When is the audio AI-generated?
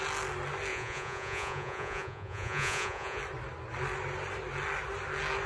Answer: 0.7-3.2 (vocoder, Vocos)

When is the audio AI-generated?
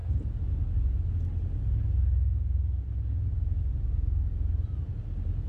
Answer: none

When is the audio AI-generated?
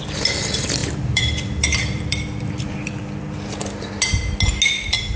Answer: 0.8-3.9 (vocoder, BigVGAN v2)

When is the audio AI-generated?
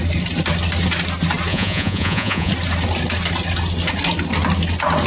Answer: 1.5-2.5 (vocoder, Vocos)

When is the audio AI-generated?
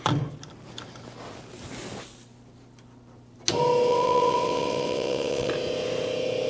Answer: 3.9-5.5 (vocoder, WaveNeXt)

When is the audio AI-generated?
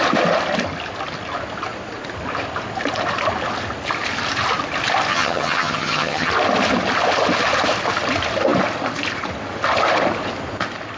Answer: 5.1-6.3 (vocoder, HiFi-GAN)